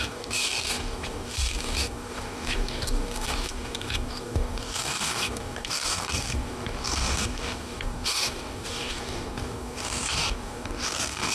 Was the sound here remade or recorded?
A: remade